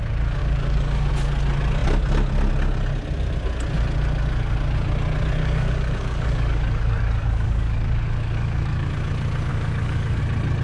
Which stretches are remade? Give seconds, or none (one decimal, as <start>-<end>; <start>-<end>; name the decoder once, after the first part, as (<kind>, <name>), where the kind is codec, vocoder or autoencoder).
0.4-1.1 (codec, DAC); 5.4-8.9; 9.5-10.2